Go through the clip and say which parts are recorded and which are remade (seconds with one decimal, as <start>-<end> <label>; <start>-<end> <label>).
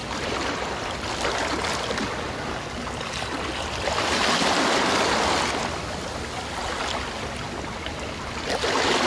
0.0-9.1 recorded